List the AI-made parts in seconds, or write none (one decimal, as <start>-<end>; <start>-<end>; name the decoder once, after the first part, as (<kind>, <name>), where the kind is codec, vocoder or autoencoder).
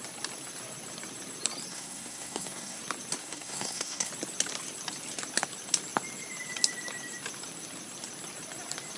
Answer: 1.7-2.8 (codec, SNAC); 3.2-4.1